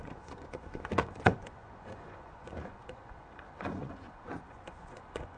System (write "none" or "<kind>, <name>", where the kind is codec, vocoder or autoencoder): vocoder, Vocos